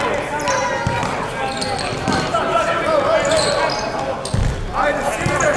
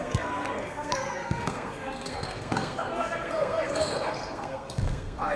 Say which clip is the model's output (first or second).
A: second